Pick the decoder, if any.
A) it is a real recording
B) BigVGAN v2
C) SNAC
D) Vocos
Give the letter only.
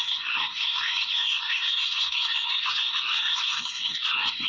C